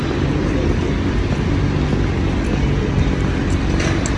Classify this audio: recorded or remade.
recorded